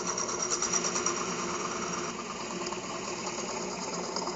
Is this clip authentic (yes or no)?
yes